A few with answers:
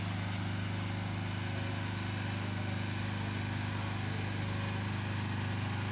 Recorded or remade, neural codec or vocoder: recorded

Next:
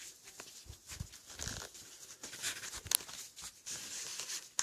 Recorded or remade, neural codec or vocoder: recorded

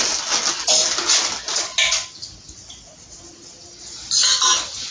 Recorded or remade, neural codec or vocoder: recorded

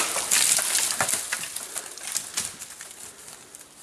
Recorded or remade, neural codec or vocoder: recorded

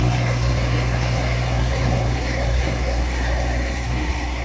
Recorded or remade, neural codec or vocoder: remade, codec, SNAC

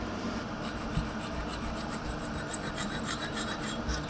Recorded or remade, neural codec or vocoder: remade, vocoder, BigVGAN v2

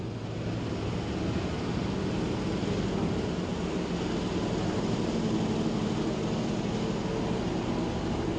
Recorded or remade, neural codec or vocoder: recorded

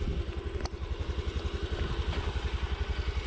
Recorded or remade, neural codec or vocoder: recorded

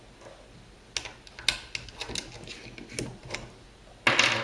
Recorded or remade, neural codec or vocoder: recorded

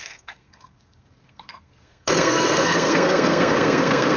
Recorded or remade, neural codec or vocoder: remade, codec, SNAC